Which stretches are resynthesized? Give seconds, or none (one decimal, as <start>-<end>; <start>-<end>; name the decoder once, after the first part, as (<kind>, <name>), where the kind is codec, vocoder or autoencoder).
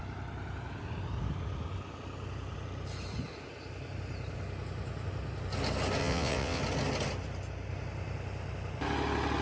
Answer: 6.0-6.6 (vocoder, WaveNeXt)